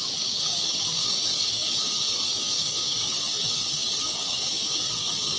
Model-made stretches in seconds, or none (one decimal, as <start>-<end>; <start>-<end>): 0.0-5.4